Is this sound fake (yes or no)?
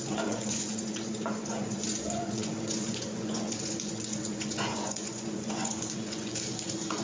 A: yes